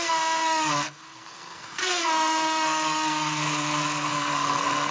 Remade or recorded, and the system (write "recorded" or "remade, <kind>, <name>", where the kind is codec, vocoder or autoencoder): remade, codec, SNAC